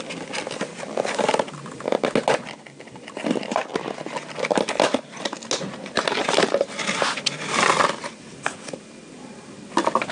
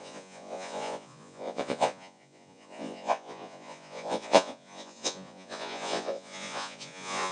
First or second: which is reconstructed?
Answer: second